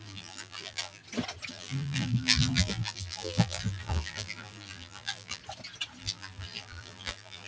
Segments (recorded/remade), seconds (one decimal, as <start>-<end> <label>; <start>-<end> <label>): 0.0-1.0 remade; 1.0-1.5 recorded; 1.5-5.4 remade; 5.4-6.0 recorded; 6.0-7.5 remade